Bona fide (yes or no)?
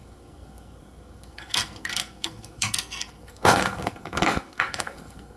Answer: no